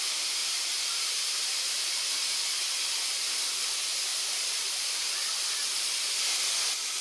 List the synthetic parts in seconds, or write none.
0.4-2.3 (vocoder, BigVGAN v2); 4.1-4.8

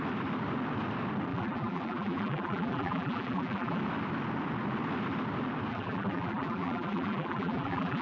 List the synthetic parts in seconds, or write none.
1.3-3.8 (vocoder, BigVGAN v2); 5.7-8.0

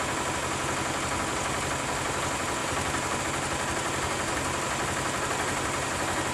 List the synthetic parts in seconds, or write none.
2.6-3.2 (vocoder, BigVGAN v2)

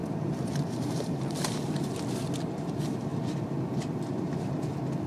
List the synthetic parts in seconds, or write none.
0.0-1.9 (vocoder, BigVGAN v2)

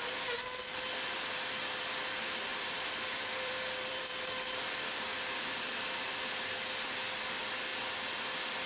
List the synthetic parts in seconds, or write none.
0.6-2.0 (vocoder, BigVGAN v2); 2.5-4.8

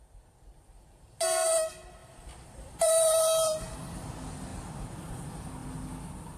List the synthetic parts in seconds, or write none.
2.0-3.2 (vocoder, BigVGAN v2)

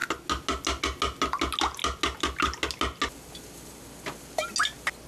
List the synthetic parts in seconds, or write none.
none